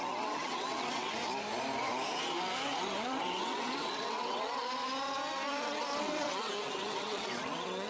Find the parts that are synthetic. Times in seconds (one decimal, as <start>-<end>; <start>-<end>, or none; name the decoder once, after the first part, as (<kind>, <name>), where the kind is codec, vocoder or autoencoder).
0.0-1.2 (vocoder, WaveNeXt); 2.8-4.6; 5.6-7.9